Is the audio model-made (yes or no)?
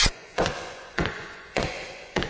yes